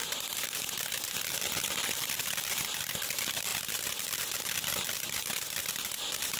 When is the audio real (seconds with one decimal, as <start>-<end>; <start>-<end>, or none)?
0.0-6.4